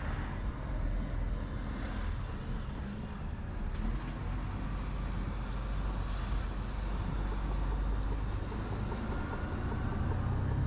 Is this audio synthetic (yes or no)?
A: no